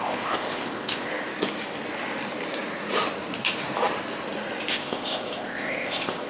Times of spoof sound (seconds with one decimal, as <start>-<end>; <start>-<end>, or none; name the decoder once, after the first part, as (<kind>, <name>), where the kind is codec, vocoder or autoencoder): 0.0-1.1 (codec, ZipCodec); 4.7-6.3